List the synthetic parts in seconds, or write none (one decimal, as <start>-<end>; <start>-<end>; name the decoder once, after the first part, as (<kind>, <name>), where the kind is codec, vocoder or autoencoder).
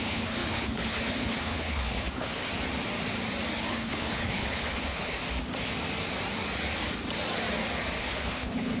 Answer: 0.0-2.5 (codec, HILCodec); 3.7-5.2; 8.0-8.8